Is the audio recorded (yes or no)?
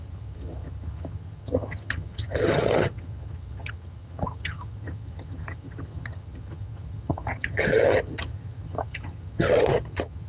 no